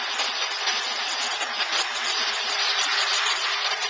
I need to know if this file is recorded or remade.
recorded